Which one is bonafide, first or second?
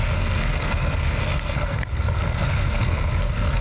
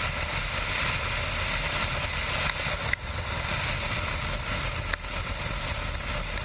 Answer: second